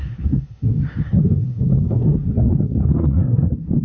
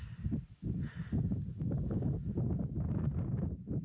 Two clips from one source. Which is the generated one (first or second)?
first